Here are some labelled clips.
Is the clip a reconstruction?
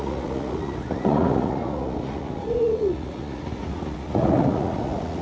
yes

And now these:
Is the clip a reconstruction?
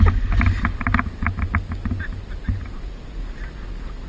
no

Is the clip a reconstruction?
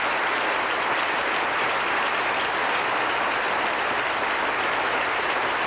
no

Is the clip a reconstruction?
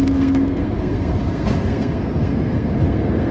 yes